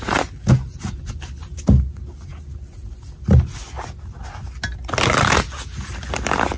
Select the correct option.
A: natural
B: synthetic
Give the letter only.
A